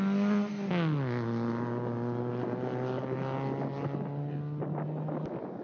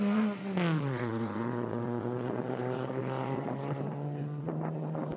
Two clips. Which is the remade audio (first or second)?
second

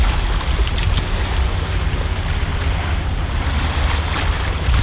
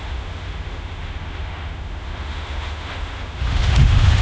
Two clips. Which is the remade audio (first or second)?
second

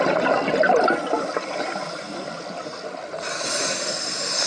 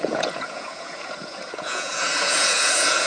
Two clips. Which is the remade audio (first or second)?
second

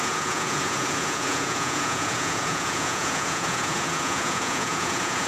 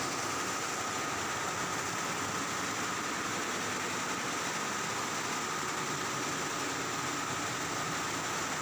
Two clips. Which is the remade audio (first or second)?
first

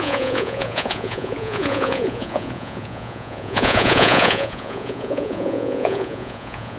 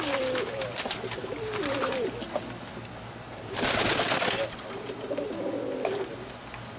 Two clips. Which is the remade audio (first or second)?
first